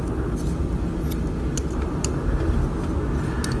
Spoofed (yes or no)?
no